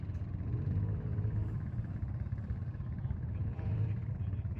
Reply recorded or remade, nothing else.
remade